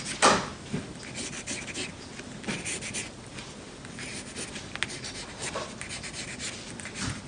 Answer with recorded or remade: recorded